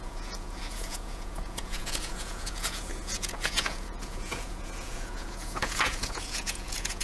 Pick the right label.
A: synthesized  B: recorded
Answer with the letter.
A